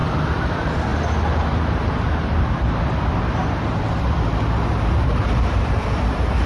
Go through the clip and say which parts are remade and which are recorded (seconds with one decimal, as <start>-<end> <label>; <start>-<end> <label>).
0.0-0.9 remade; 0.9-4.8 recorded; 4.8-6.5 remade